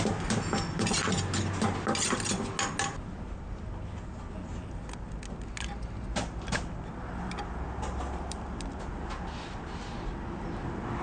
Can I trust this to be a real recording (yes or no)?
yes